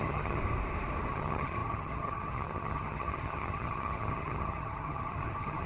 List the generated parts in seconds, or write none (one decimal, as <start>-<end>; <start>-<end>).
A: 0.0-0.4; 1.1-5.7